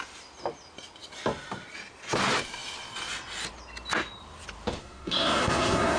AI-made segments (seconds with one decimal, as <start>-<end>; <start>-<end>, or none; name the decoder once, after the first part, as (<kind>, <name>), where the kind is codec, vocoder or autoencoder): 4.8-6.0 (codec, SNAC)